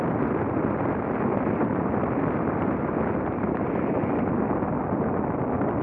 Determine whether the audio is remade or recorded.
recorded